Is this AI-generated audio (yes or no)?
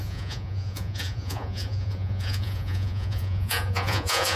yes